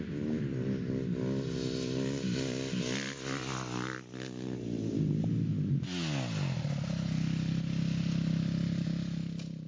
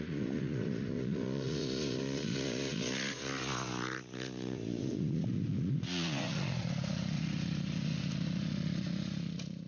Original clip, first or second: first